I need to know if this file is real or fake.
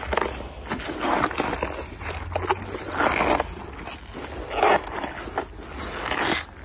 real